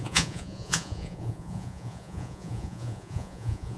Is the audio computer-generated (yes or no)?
yes